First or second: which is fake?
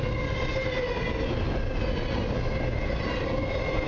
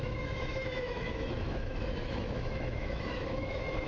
second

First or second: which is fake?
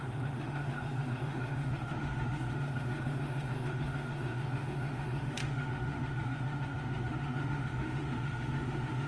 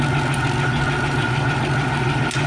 first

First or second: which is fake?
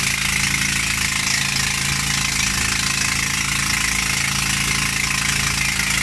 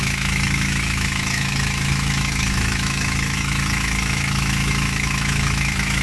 second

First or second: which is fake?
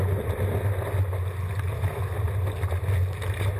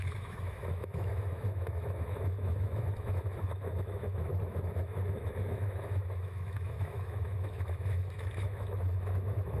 second